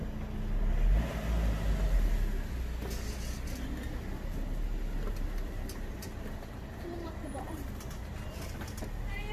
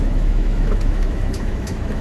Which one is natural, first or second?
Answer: first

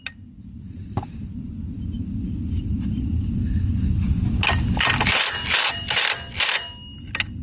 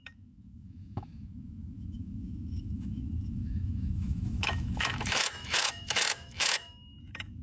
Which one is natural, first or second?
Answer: first